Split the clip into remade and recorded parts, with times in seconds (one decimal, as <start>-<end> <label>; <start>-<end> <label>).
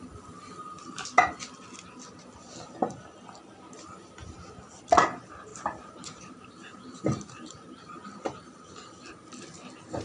0.0-5.5 recorded; 5.5-7.9 remade; 7.9-10.0 recorded